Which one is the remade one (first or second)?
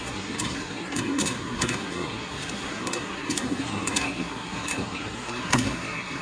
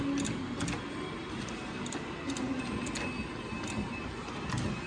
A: first